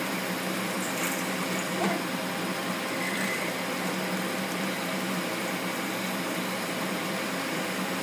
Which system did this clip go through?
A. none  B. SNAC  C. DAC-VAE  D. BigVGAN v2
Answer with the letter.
D